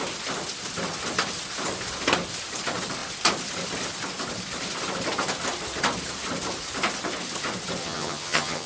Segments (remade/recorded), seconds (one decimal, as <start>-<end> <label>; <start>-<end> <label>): 0.0-7.8 recorded; 7.8-8.7 remade